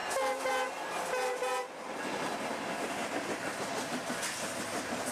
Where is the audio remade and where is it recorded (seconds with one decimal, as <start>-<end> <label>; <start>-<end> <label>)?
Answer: 0.0-3.0 recorded; 3.0-3.6 remade; 3.6-5.1 recorded